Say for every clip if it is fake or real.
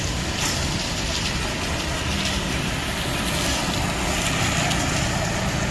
real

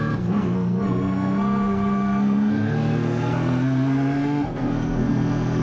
fake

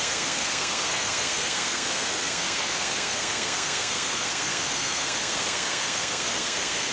fake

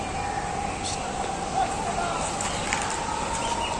real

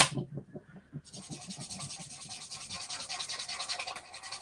real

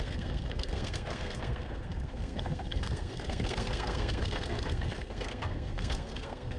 fake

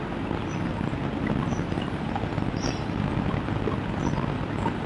real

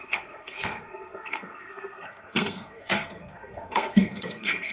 fake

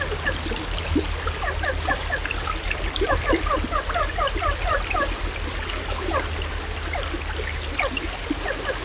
real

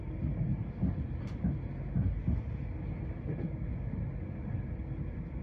real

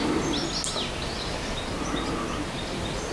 real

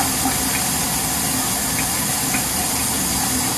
real